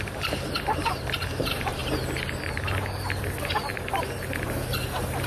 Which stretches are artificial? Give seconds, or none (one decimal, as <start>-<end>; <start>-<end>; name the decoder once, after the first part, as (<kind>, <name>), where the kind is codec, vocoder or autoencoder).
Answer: 0.0-1.8 (vocoder, BigVGAN v2); 3.7-4.7